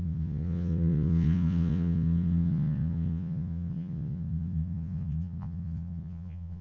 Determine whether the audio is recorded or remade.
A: remade